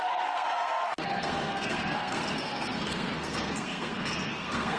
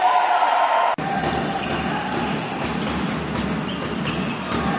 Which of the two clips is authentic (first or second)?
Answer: second